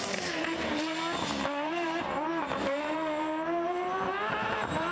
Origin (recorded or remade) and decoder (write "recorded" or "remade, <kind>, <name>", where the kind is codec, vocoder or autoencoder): remade, vocoder, BigVGAN v2